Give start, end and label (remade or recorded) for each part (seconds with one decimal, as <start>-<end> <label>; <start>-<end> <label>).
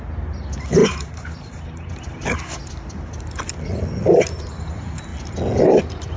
0.0-0.8 recorded; 0.8-1.9 remade; 1.9-6.2 recorded